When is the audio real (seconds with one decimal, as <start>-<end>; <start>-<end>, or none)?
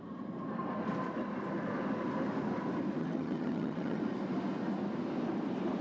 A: 0.0-3.0; 4.0-5.8